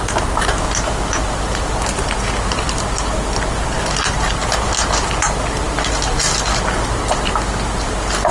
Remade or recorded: recorded